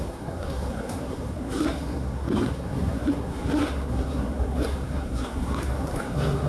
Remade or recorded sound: remade